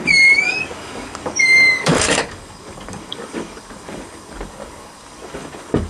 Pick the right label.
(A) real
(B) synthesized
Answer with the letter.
B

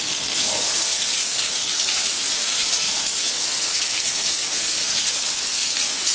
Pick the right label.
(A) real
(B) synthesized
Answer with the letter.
B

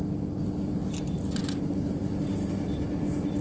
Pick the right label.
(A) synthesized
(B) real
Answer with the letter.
B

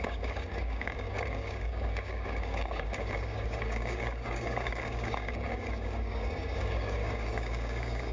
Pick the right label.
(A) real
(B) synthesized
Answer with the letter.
B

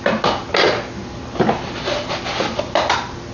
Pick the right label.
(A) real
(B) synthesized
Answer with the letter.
A